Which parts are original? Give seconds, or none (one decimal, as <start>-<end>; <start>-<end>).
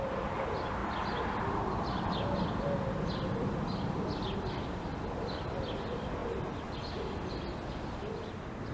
0.0-8.7